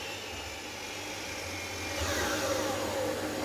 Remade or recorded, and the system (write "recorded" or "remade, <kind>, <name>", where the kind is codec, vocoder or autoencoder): recorded